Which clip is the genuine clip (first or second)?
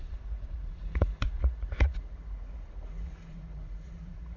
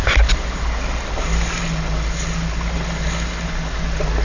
second